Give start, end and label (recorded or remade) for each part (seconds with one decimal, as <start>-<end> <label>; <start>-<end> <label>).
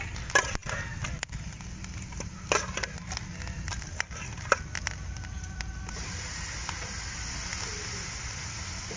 0.0-9.0 recorded